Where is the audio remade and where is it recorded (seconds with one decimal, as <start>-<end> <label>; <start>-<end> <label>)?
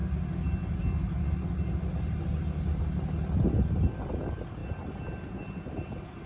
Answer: 0.0-6.3 recorded